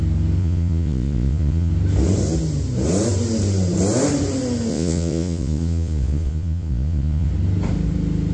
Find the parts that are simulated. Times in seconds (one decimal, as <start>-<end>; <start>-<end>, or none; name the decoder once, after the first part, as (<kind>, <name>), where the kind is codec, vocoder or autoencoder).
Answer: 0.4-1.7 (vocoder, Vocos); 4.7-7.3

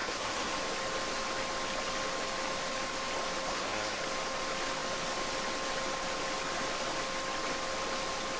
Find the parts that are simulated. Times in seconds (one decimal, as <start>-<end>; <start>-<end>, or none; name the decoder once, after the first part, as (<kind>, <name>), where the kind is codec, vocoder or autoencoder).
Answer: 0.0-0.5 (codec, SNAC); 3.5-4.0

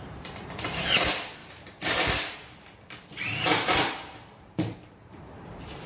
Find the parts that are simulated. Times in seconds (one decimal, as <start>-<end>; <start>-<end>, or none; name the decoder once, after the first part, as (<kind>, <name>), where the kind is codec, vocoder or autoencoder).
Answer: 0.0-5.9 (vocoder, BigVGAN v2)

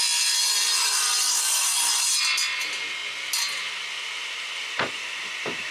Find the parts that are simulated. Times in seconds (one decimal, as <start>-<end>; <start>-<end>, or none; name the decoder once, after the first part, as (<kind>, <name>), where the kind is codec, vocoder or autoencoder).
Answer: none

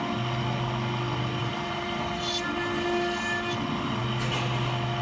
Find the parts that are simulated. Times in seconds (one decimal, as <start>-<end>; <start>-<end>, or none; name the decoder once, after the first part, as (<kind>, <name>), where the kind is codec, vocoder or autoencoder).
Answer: 1.4-2.2 (vocoder, BigVGAN v2)